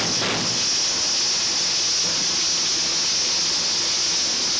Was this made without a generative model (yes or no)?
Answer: yes